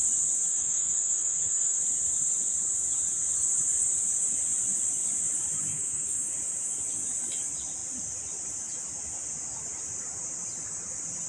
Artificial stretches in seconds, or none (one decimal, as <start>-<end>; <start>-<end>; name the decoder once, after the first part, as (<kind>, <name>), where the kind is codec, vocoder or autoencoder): 0.5-1.8 (autoencoder, DAC-VAE); 5.7-6.3